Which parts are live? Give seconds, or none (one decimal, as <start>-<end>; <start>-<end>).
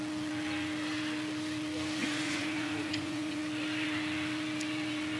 0.0-2.0; 3.4-5.2